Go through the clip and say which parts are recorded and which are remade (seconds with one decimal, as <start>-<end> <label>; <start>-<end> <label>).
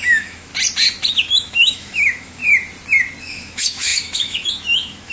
0.0-0.5 remade; 0.5-1.1 recorded; 1.1-2.4 remade; 2.4-3.2 recorded; 3.2-5.1 remade